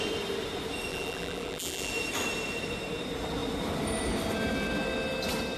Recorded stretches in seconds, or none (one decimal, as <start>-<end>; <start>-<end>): 0.0-0.9; 1.9-5.6